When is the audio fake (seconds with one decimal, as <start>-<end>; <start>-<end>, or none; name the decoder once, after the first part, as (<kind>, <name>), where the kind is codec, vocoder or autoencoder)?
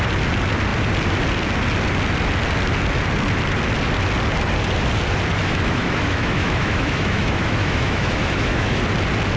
5.4-8.8 (autoencoder, DAC-VAE)